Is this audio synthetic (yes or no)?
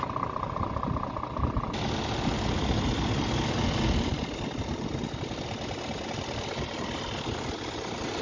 no